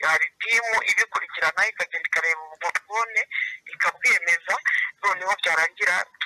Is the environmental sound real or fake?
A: real